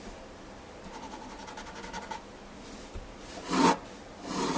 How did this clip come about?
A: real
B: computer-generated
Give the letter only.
A